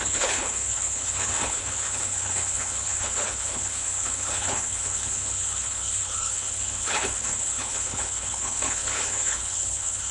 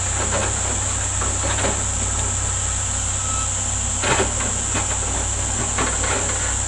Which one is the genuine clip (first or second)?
second